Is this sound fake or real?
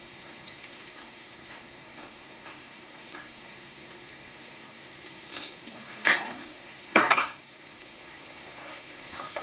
fake